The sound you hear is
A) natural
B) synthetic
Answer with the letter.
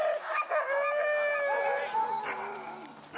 A